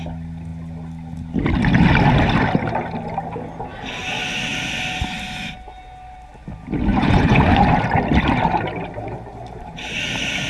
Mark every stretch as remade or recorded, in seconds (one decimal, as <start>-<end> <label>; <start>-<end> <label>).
0.0-6.9 recorded; 6.9-7.6 remade; 7.6-10.5 recorded